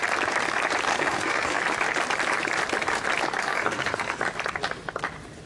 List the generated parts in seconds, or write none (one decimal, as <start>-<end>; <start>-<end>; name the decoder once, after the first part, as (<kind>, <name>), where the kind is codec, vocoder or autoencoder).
0.9-1.6 (codec, SNAC); 3.4-4.2